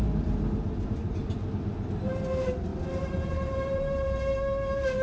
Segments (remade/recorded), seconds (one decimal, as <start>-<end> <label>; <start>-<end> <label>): 0.0-1.0 recorded; 1.0-1.5 remade; 1.5-2.7 recorded; 2.7-4.2 remade; 4.2-5.0 recorded

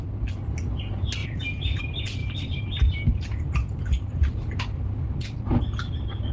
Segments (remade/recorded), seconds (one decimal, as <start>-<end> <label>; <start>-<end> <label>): 0.0-1.2 recorded; 1.2-1.8 remade; 1.8-2.2 recorded; 2.2-4.6 remade; 4.6-6.3 recorded

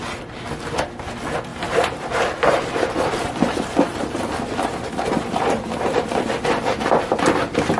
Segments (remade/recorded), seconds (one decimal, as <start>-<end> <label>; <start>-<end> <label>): 0.0-1.5 recorded; 1.5-6.2 remade; 6.2-7.8 recorded

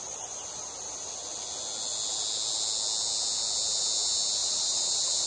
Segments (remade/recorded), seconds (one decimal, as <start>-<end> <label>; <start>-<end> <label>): 0.0-4.4 recorded; 4.4-5.3 remade

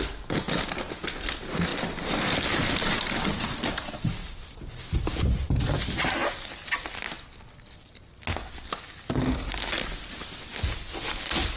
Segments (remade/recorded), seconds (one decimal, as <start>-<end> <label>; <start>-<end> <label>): 0.0-4.2 recorded; 4.2-6.5 remade; 6.5-11.6 recorded

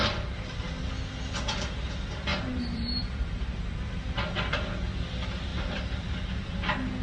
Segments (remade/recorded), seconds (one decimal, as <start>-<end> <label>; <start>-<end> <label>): 0.0-2.3 recorded; 2.3-4.1 remade; 4.1-5.5 recorded; 5.5-6.5 remade; 6.5-7.0 recorded

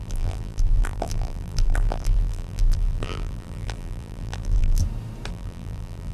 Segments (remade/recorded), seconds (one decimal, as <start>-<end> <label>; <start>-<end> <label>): 0.0-4.8 remade; 4.8-5.3 recorded; 5.3-6.1 remade